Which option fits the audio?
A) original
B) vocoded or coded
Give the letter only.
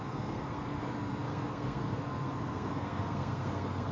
B